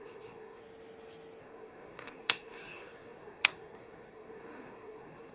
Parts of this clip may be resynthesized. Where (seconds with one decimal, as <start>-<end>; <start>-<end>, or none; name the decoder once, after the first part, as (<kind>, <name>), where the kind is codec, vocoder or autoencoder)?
0.0-0.6 (codec, SNAC); 1.4-5.3